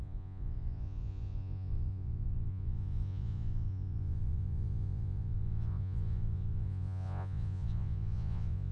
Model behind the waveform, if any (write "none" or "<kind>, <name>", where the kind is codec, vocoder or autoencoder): vocoder, Vocos